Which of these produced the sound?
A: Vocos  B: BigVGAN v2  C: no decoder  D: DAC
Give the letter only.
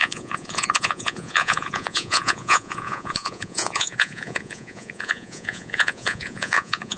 A